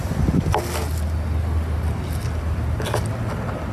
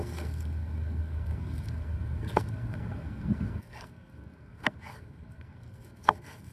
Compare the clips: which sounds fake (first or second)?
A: second